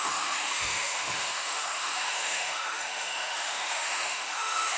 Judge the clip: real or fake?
fake